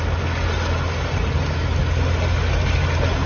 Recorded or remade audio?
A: recorded